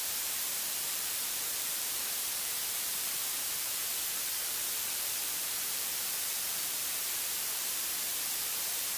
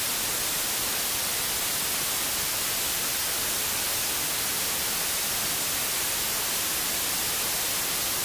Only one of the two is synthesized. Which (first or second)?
first